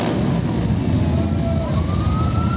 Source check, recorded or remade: recorded